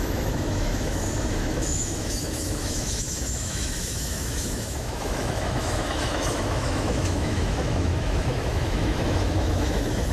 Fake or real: fake